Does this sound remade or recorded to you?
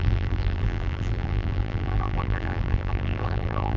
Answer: remade